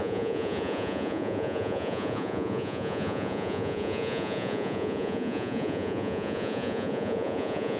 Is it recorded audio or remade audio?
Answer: remade